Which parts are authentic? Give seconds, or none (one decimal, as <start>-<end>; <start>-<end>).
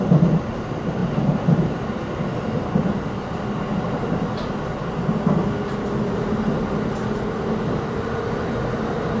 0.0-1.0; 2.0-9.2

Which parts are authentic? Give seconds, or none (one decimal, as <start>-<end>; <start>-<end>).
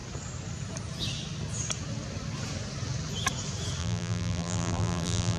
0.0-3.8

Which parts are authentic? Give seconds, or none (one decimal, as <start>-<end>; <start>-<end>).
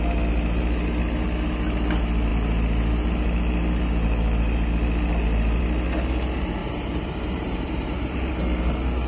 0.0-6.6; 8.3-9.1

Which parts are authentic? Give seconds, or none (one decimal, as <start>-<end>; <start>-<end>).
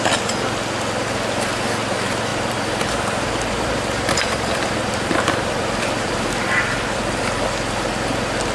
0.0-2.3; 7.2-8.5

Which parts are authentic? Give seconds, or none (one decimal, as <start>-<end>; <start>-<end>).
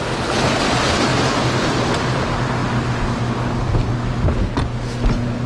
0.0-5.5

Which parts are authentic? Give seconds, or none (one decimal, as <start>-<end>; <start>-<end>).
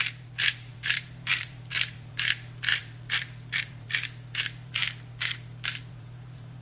4.8-5.9